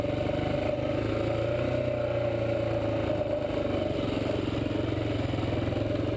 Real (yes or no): yes